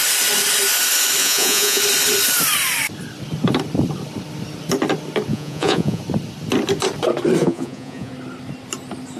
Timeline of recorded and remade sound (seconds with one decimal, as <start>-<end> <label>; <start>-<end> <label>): 0.0-1.2 recorded; 1.2-1.8 remade; 1.8-5.3 recorded; 5.3-6.0 remade; 6.0-7.4 recorded; 7.4-8.1 remade; 8.1-9.2 recorded